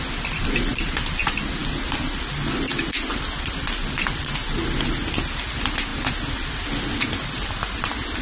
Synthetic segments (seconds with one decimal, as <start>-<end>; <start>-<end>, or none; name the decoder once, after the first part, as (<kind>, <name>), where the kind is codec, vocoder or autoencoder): none